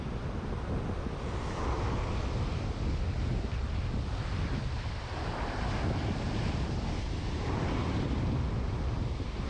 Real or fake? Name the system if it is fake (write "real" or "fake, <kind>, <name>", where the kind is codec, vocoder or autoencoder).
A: real